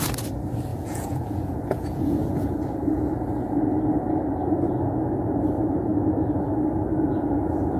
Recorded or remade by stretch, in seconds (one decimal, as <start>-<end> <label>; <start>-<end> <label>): 0.0-0.7 recorded; 0.7-2.5 remade; 2.5-7.8 recorded